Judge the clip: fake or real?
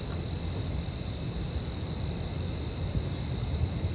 real